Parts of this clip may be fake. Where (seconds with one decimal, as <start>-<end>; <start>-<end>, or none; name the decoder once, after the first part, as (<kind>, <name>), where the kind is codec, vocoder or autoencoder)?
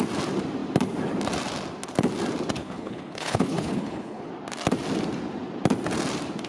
2.6-4.3 (codec, HILCodec)